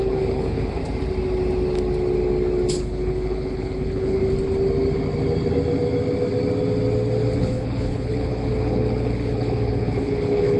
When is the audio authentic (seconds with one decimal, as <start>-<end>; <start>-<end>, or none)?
0.8-2.7; 4.2-7.4